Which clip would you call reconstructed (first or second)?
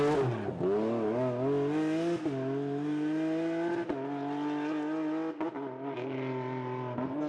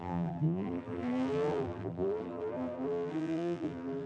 second